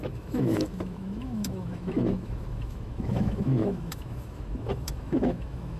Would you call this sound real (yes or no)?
no